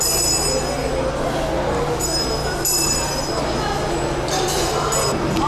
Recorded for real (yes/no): yes